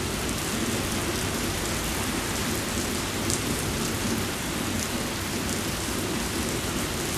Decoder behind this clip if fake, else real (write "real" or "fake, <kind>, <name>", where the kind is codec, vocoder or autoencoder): real